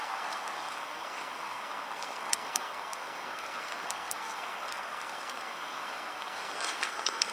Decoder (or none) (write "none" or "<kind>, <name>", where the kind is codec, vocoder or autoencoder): codec, SNAC